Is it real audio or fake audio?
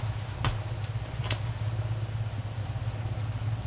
real